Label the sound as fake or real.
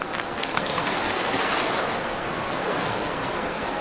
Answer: fake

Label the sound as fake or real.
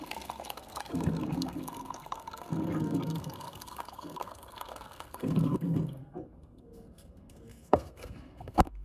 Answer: fake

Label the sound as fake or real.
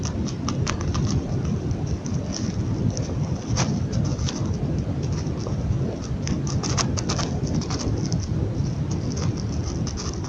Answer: real